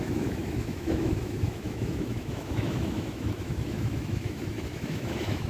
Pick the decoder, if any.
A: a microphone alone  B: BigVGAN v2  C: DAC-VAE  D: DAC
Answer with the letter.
C